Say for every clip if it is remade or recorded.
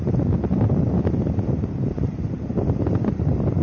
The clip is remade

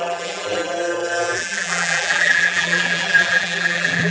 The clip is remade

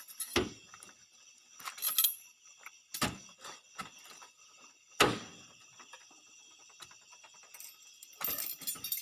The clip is recorded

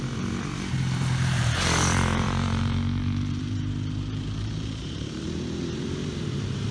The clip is remade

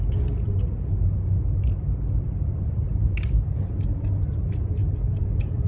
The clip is recorded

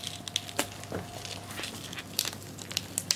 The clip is recorded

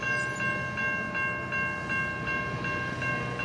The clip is recorded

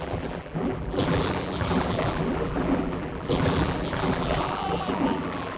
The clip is remade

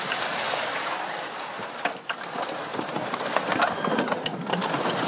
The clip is remade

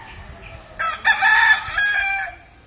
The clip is recorded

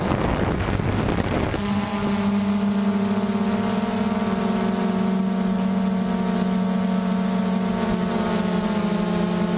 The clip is recorded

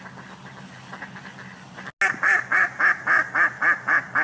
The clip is recorded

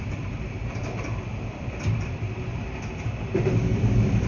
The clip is remade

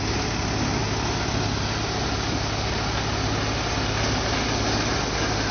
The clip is recorded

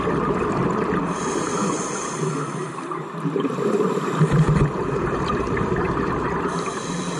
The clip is remade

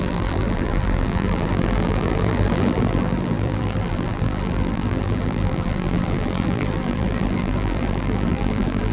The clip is remade